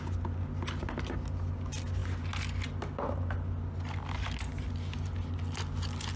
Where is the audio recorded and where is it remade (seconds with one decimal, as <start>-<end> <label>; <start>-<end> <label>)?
0.0-6.2 recorded